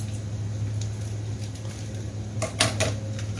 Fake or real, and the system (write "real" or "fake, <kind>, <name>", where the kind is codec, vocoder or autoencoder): real